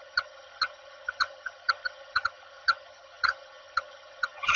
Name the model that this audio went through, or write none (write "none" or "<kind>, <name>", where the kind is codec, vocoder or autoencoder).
vocoder, HiFi-GAN